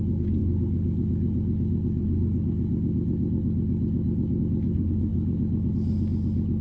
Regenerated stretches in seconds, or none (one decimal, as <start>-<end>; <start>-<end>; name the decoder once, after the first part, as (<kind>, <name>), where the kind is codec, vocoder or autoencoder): none